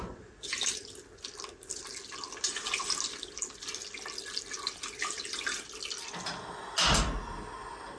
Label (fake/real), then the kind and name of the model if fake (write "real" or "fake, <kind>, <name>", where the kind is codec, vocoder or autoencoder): real